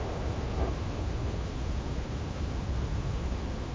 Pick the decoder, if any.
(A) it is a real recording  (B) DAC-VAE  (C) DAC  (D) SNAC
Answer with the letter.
B